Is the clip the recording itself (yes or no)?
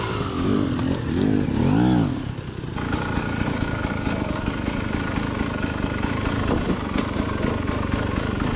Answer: yes